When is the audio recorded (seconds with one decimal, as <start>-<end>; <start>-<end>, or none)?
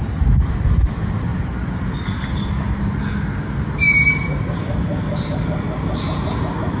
0.0-6.8